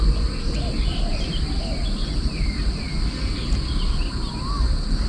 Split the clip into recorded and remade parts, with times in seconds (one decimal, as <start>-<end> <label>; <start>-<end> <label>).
0.0-5.1 recorded